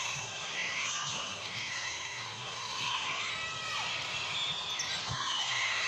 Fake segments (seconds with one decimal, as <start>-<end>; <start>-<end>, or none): 0.0-3.3; 5.0-5.9